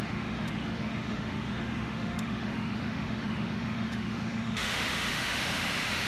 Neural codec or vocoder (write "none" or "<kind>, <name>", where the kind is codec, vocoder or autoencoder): autoencoder, DAC-VAE